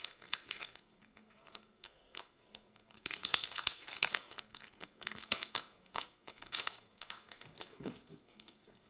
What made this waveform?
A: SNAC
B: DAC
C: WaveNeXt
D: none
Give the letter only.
A